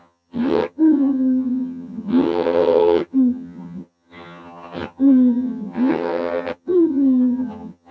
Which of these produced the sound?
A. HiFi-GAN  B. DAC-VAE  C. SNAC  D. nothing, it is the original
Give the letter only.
A